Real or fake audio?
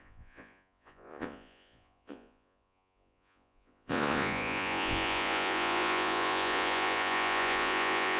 fake